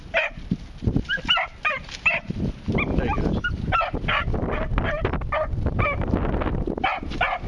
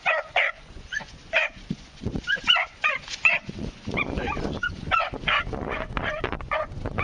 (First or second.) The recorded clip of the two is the first